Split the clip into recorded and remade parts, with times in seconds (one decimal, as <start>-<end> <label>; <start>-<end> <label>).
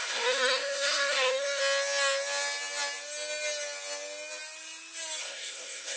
0.0-1.6 remade; 1.6-5.2 recorded; 5.2-6.0 remade